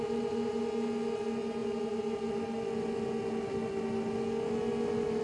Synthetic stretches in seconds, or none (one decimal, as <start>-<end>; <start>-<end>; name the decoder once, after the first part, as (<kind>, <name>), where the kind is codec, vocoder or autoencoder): none